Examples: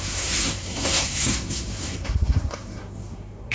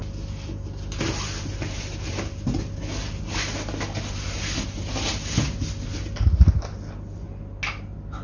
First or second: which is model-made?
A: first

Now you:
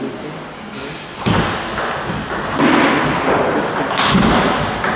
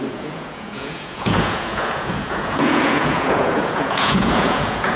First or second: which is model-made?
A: second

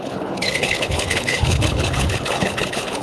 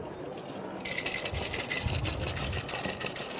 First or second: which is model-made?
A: first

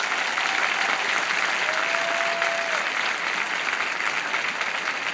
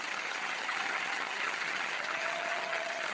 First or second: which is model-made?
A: second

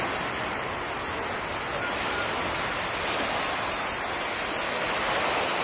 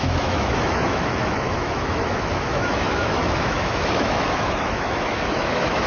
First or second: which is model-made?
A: second